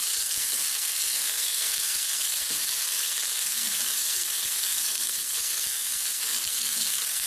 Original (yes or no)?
no